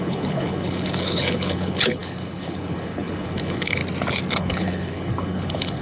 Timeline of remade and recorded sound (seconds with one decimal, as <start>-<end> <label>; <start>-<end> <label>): 0.0-3.8 remade; 3.8-4.3 recorded; 4.3-5.8 remade